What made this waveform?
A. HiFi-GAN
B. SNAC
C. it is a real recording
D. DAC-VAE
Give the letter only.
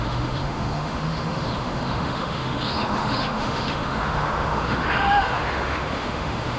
D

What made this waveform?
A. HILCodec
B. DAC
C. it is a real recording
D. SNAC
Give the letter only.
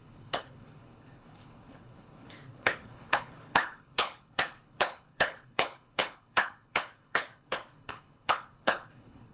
A